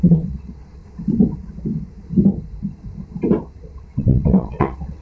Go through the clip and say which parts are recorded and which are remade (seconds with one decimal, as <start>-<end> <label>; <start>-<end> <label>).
0.0-0.8 remade; 0.8-3.8 recorded; 3.8-5.0 remade